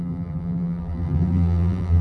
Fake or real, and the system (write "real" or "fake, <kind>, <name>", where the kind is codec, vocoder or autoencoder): fake, vocoder, BigVGAN v2